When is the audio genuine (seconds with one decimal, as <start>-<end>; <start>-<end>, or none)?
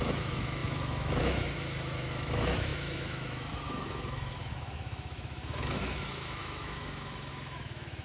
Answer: none